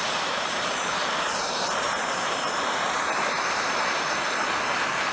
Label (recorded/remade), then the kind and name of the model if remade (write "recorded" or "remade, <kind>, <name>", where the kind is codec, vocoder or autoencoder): remade, vocoder, BigVGAN v2